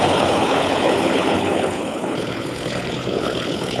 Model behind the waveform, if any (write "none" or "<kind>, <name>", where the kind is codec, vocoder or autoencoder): codec, HILCodec